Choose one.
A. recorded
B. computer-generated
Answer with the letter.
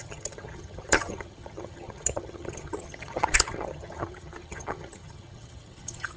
B